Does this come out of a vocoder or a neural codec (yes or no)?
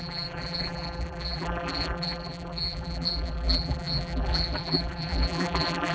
yes